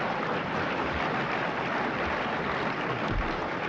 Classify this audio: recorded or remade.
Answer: recorded